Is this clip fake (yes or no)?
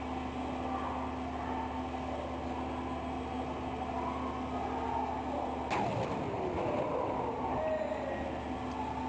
no